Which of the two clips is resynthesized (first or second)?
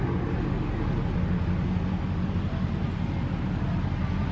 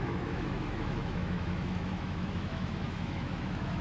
second